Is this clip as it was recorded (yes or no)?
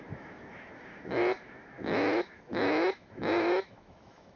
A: no